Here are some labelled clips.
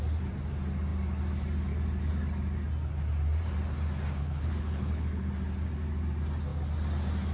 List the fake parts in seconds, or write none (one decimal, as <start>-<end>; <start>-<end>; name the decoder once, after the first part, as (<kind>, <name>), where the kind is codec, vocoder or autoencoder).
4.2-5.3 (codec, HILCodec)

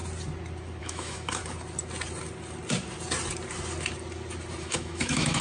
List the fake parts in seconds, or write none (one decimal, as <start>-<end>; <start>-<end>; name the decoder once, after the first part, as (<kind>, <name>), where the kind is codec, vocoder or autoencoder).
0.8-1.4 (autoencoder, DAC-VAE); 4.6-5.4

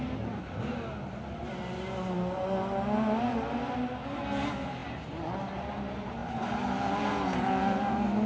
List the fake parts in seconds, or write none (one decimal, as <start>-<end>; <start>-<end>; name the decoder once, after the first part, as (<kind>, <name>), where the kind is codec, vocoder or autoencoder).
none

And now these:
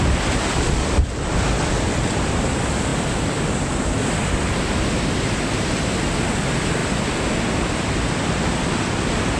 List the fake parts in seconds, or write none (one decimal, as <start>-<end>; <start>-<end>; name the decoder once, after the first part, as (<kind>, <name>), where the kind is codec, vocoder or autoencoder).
none

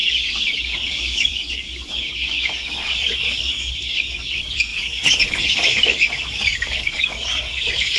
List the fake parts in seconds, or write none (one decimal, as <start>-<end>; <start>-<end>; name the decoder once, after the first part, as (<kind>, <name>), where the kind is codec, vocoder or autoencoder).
0.0-8.0 (codec, DAC)